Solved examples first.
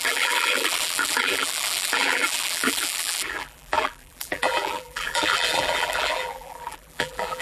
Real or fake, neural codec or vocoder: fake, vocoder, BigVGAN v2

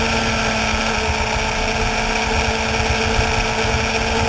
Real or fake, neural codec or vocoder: real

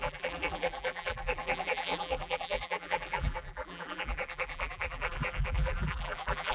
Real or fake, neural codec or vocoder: fake, vocoder, BigVGAN v2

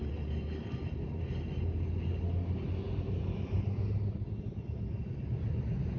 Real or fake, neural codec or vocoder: real